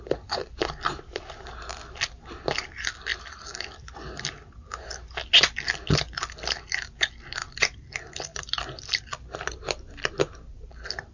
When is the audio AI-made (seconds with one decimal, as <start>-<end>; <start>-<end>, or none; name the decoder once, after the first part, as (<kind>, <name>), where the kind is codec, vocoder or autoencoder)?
none